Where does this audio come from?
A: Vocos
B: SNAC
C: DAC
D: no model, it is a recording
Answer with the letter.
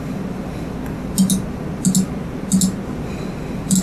D